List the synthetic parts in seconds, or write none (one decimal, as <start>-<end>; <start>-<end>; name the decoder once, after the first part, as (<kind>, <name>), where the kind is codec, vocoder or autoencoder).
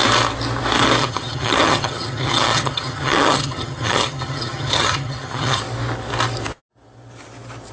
1.0-5.6 (vocoder, HiFi-GAN)